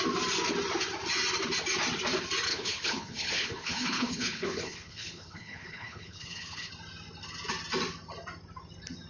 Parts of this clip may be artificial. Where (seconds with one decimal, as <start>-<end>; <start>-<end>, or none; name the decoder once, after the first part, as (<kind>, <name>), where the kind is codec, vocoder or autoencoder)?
2.5-6.7 (codec, HILCodec)